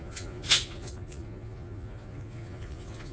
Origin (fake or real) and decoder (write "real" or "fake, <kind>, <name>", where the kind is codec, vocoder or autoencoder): fake, vocoder, Vocos